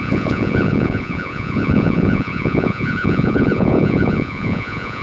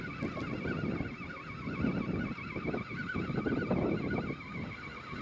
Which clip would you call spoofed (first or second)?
first